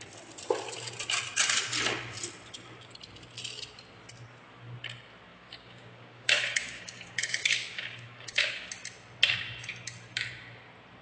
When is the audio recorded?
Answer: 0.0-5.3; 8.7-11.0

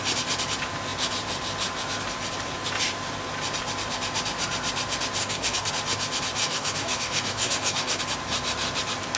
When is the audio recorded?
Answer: 0.0-5.2; 5.7-6.4; 8.0-9.2

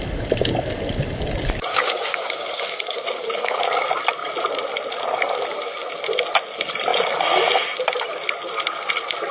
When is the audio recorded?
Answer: 0.0-1.7; 3.6-9.3

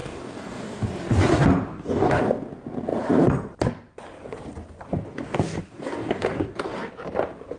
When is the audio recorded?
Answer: 0.8-1.7; 2.2-5.1; 6.9-7.6

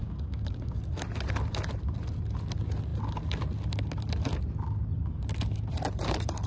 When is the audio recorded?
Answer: 0.8-6.5

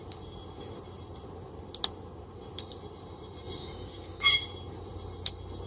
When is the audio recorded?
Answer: 0.0-3.6; 4.2-5.7